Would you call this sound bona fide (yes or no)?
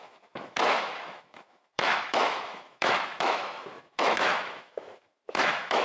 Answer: no